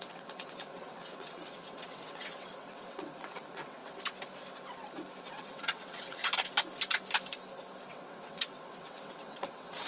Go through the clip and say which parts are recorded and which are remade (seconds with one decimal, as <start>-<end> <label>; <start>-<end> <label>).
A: 0.0-3.8 remade; 3.8-5.2 recorded; 5.2-6.2 remade; 6.2-7.9 recorded; 7.9-9.9 remade